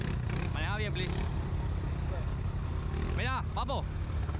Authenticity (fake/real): real